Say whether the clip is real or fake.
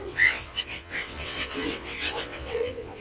fake